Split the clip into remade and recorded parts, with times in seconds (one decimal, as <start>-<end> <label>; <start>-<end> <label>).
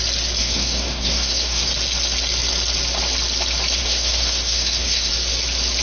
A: 0.0-0.4 recorded; 0.4-1.7 remade; 1.7-3.8 recorded; 3.8-5.1 remade; 5.1-5.8 recorded